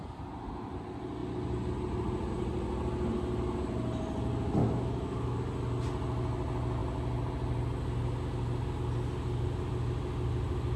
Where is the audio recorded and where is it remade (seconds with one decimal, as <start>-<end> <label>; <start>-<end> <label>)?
0.0-4.6 recorded; 4.6-5.4 remade; 5.4-10.8 recorded